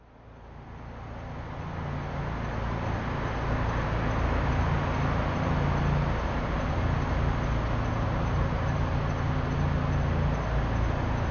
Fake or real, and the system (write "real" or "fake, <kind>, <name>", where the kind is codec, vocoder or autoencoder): real